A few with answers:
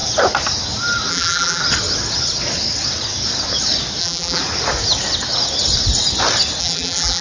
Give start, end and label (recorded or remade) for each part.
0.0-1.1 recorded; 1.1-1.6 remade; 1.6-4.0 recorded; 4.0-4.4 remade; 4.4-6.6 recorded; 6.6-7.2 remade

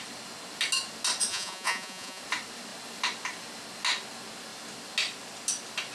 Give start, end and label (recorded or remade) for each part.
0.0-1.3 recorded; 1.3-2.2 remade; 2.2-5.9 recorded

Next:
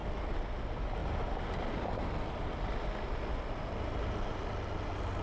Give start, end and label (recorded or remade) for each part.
0.0-5.2 recorded

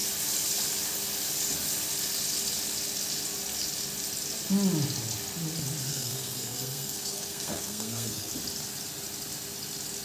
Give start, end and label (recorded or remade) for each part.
0.0-5.9 recorded; 5.9-8.3 remade; 8.3-10.0 recorded

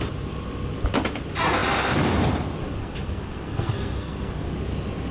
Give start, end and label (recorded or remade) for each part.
0.0-2.8 recorded; 2.8-4.5 remade; 4.5-5.1 recorded

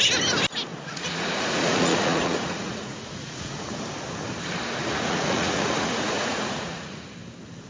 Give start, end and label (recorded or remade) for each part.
0.0-0.7 recorded; 0.7-3.8 remade; 3.8-4.8 recorded; 4.8-7.1 remade; 7.1-7.7 recorded